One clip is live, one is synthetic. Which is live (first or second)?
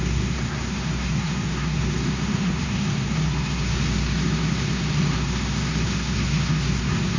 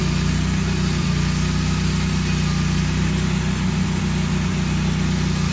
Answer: second